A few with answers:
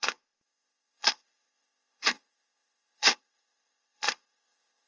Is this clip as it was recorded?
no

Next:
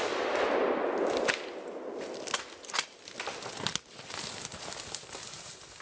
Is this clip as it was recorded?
yes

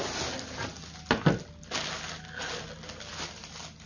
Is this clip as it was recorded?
yes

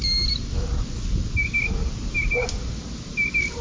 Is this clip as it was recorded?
yes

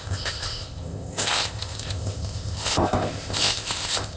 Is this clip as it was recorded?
no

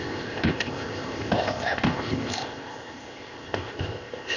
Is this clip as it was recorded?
no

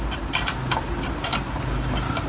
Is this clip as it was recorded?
yes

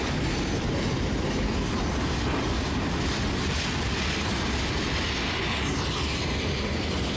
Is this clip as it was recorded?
yes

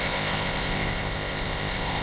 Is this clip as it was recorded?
no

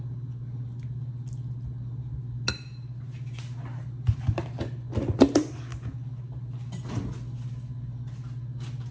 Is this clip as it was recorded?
yes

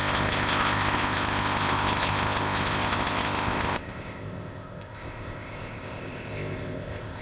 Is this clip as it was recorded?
no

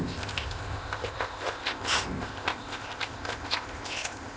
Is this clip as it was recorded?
no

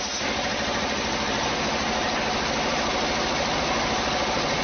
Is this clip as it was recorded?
yes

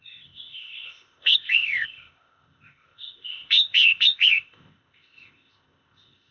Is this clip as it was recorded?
no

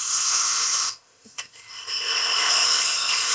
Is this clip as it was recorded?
no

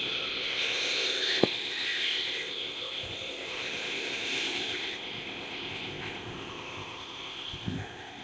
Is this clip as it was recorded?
no